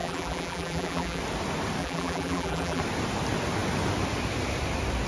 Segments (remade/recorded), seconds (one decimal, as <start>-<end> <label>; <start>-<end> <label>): 0.0-1.2 remade; 1.2-1.8 recorded; 1.8-2.8 remade; 2.8-5.1 recorded